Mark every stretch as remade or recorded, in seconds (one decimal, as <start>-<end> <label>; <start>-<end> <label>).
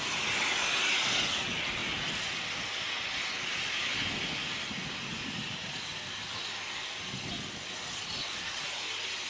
0.0-9.3 recorded